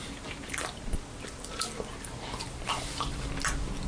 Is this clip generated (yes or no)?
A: no